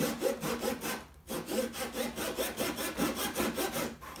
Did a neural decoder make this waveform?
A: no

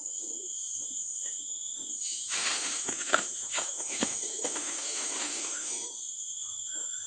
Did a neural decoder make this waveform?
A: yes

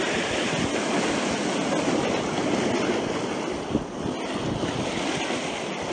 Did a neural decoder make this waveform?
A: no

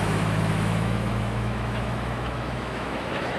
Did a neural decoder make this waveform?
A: yes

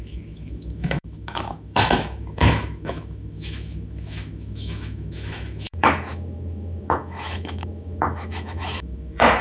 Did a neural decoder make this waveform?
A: yes